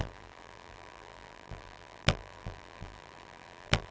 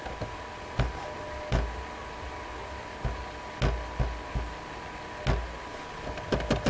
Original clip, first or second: second